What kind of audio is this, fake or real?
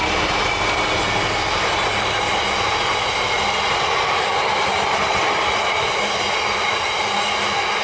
real